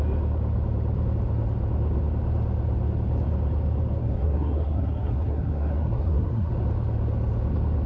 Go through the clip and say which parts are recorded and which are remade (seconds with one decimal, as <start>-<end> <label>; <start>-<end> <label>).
0.0-4.0 recorded; 4.0-6.5 remade; 6.5-7.9 recorded